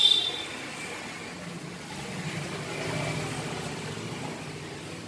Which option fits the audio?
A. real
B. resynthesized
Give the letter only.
A